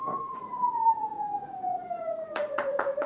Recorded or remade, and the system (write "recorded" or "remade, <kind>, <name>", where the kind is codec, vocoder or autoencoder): remade, vocoder, Vocos